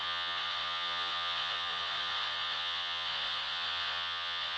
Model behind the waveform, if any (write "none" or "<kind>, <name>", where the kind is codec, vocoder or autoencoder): vocoder, Vocos